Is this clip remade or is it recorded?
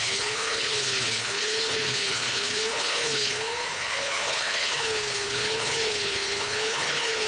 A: remade